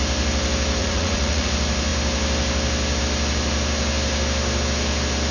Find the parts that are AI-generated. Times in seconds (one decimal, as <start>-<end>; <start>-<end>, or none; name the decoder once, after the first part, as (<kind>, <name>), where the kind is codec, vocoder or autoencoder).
0.8-1.5 (vocoder, Vocos)